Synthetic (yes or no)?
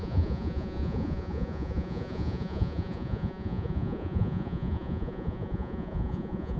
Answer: yes